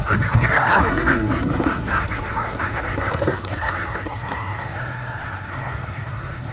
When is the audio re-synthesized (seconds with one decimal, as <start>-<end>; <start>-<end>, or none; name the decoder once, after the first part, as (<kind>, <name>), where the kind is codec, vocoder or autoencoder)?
0.0-6.5 (codec, SNAC)